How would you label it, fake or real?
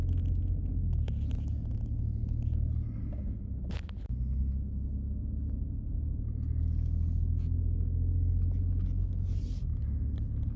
real